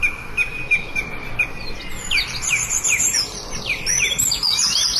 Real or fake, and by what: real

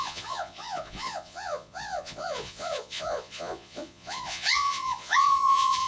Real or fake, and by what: fake, vocoder, Vocos